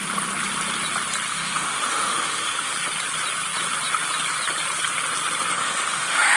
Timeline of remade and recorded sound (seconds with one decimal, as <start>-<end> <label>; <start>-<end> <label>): 0.0-1.3 recorded; 1.3-2.7 remade; 2.7-5.6 recorded; 5.6-6.4 remade